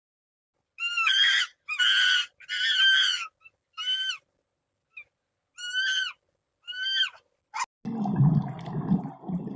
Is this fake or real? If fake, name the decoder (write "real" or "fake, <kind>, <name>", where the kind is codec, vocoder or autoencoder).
real